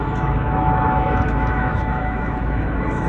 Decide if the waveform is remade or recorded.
remade